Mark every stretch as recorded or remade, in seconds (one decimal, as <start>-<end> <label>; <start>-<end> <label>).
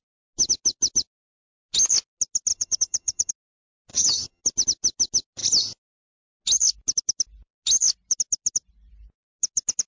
0.0-2.5 recorded; 2.5-3.3 remade; 3.3-3.9 recorded; 3.9-4.4 remade; 4.4-9.9 recorded